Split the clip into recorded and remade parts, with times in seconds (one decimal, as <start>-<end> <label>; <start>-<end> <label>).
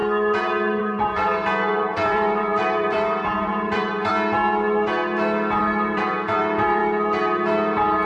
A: 0.0-0.8 recorded; 0.8-1.3 remade; 1.3-1.8 recorded; 1.8-4.1 remade; 4.1-5.6 recorded; 5.6-6.8 remade; 6.8-8.1 recorded